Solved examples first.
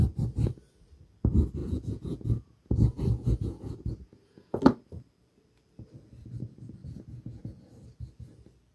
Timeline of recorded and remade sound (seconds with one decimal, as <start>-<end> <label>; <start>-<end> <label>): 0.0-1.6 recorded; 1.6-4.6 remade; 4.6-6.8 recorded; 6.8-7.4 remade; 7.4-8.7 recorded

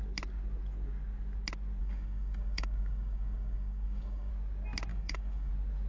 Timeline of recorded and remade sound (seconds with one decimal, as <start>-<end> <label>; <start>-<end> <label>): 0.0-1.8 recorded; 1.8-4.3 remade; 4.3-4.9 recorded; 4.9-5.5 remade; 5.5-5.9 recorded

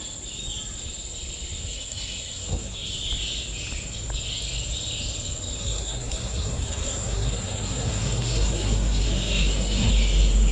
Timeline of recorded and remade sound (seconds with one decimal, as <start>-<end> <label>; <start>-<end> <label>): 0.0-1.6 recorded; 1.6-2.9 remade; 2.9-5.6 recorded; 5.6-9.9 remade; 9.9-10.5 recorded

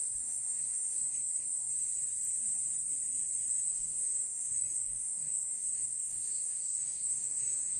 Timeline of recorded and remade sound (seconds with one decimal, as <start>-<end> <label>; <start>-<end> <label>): 0.0-1.7 remade; 1.7-3.5 recorded; 3.5-7.8 remade

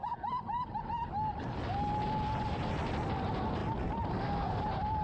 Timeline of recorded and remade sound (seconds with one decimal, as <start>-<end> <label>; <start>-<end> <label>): 0.0-5.0 recorded

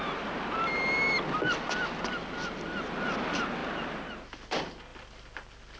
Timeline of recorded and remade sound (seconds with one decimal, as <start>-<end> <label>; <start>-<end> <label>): 0.0-5.8 recorded

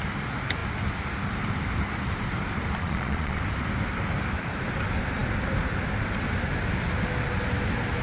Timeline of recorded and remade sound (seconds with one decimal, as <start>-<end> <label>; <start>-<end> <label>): 0.0-2.8 recorded; 2.8-3.4 remade; 3.4-8.0 recorded